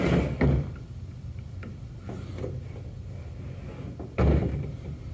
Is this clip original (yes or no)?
yes